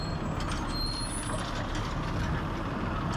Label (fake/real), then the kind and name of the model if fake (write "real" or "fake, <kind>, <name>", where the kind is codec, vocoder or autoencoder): real